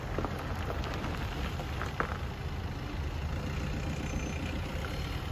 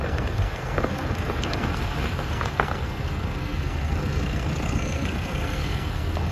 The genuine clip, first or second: first